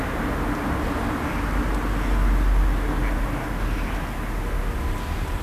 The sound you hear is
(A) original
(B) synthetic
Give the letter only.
A